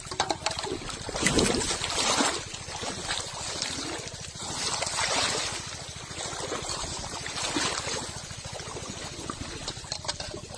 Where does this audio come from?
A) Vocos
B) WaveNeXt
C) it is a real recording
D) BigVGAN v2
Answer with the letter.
C